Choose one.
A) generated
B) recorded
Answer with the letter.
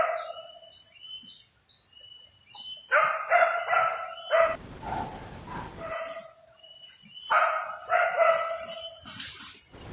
B